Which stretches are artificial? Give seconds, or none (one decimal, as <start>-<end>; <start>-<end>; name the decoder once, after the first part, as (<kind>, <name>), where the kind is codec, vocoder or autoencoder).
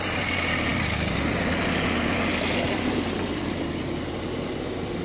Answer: none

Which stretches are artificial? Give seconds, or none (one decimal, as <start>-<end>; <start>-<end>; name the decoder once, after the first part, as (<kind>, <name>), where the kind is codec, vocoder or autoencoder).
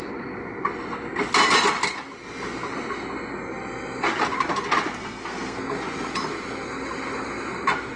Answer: 5.0-5.6 (codec, SNAC)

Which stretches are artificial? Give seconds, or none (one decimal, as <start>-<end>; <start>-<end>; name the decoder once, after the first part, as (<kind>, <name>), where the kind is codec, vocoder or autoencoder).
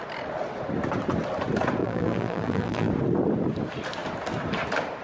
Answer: 1.8-2.9 (vocoder, BigVGAN v2)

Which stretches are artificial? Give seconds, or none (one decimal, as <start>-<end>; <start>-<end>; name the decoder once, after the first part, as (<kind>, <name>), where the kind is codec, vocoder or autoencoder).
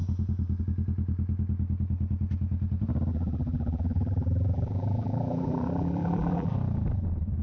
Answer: 3.1-6.5 (vocoder, BigVGAN v2)